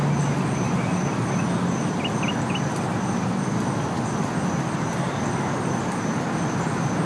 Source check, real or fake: real